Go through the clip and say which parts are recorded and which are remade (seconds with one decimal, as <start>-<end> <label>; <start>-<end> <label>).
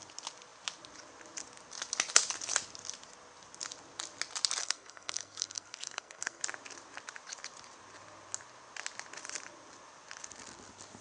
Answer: 0.0-4.6 recorded; 4.6-6.4 remade; 6.4-11.0 recorded